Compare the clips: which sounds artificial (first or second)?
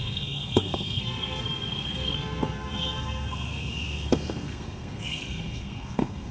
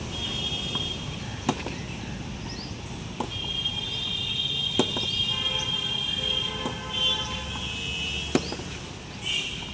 first